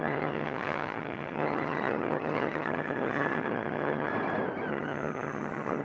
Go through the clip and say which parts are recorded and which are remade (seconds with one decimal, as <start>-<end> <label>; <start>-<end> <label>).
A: 0.0-4.1 remade; 4.1-4.7 recorded; 4.7-5.8 remade